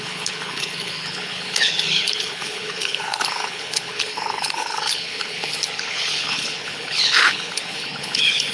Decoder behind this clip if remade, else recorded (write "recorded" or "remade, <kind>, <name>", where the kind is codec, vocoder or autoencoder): remade, codec, HILCodec